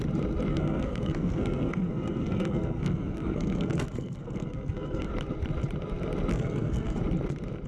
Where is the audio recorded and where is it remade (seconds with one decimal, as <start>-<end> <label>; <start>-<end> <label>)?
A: 0.0-0.5 recorded; 0.5-5.1 remade; 5.1-6.3 recorded; 6.3-7.0 remade; 7.0-7.7 recorded